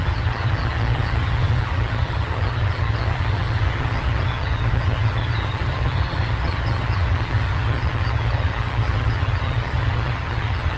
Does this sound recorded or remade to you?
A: remade